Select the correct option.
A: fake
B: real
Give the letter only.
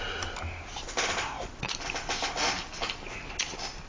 B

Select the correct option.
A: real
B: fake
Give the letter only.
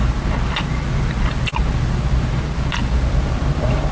A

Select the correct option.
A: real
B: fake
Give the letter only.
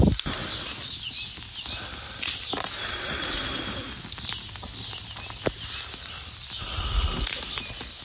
A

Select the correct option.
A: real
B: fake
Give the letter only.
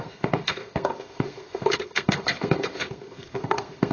B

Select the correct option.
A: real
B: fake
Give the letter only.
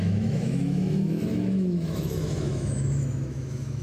B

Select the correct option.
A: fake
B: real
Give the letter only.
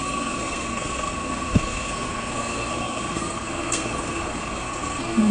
A